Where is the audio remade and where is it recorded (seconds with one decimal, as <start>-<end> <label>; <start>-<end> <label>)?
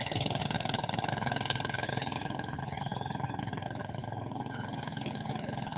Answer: 0.0-5.8 remade